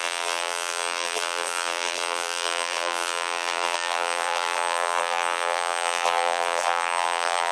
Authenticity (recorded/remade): remade